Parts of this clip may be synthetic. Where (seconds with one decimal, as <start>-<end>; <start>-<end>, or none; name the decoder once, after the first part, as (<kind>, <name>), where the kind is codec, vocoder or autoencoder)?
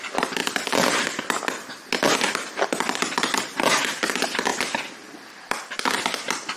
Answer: none